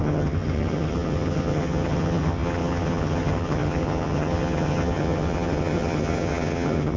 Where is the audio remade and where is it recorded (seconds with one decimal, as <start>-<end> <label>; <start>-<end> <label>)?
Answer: 0.0-7.0 remade